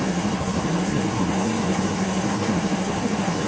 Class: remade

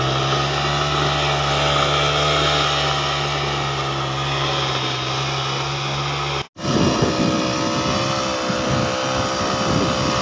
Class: recorded